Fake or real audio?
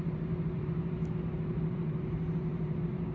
fake